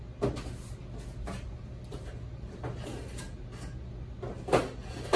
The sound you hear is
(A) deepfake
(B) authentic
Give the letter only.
B